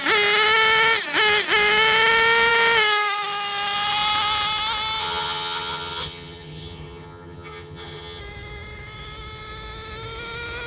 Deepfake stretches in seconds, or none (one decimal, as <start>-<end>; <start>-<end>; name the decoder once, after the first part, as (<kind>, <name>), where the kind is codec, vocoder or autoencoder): 5.0-8.2 (vocoder, HiFi-GAN)